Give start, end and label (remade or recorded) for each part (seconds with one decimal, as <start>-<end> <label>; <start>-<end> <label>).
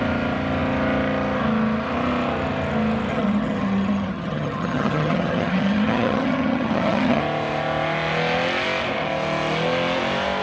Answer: 0.0-3.1 recorded; 3.1-7.2 remade; 7.2-10.4 recorded